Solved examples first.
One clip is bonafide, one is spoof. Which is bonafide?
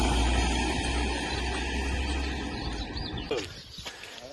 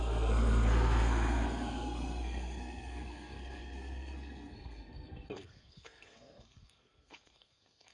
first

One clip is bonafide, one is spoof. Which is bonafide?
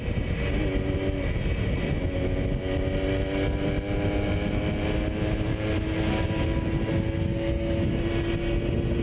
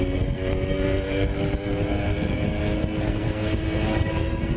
first